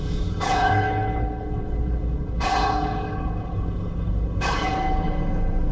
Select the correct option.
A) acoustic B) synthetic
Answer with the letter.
B